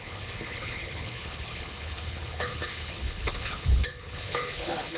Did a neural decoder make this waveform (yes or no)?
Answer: yes